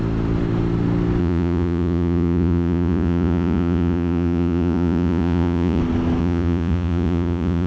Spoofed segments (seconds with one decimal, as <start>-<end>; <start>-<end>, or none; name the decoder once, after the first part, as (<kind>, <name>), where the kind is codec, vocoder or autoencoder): 1.2-5.8 (vocoder, Vocos); 6.2-7.7